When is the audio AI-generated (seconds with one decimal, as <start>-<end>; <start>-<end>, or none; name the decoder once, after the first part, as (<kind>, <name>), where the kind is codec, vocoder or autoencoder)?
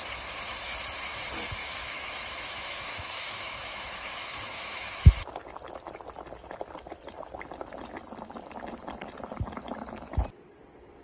1.6-5.3 (autoencoder, DAC-VAE)